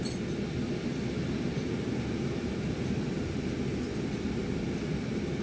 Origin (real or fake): real